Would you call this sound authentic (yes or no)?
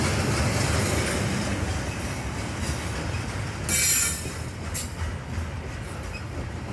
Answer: yes